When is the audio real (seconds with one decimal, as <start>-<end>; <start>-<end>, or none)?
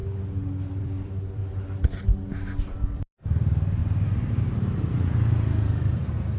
0.0-0.8; 1.4-2.6